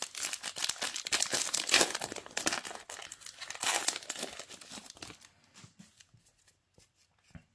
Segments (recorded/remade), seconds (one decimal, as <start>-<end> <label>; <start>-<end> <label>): 0.0-7.5 recorded